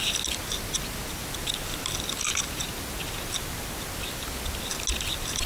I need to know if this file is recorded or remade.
recorded